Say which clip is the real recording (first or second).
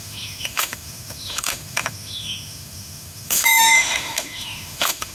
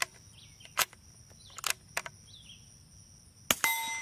second